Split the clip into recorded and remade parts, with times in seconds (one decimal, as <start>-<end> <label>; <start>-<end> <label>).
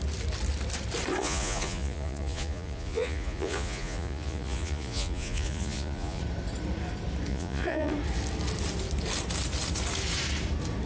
0.0-1.2 recorded; 1.2-6.2 remade; 6.2-7.3 recorded; 7.3-7.9 remade; 7.9-10.9 recorded